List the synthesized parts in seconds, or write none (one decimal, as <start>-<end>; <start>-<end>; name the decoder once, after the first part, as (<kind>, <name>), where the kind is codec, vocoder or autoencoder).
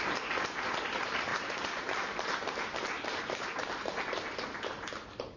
0.0-5.4 (vocoder, BigVGAN v2)